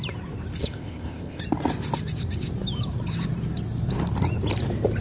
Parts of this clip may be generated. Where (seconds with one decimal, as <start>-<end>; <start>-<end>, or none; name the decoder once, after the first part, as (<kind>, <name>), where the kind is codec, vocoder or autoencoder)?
0.6-1.4 (codec, ZipCodec)